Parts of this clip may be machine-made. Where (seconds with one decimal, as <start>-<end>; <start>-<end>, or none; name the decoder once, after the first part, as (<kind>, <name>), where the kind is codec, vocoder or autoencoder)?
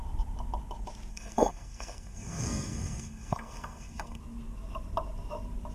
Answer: 1.1-4.2 (codec, SNAC)